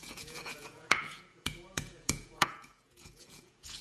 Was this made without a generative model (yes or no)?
no